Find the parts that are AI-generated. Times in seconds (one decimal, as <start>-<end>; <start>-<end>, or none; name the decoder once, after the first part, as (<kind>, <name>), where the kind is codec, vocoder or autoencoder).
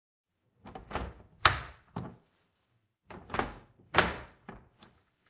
0.0-5.3 (vocoder, BigVGAN v2)